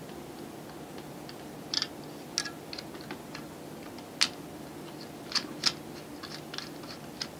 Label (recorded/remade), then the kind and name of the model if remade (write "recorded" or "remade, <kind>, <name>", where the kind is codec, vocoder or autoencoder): recorded